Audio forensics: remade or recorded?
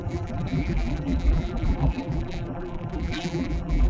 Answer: remade